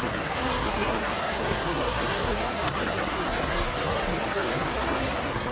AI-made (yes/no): yes